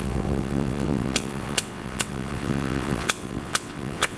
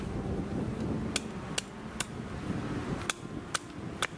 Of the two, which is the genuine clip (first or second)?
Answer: second